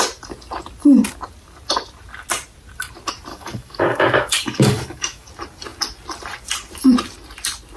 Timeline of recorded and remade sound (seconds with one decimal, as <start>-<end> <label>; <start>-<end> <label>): 0.0-3.3 recorded; 3.3-5.3 remade; 5.3-7.8 recorded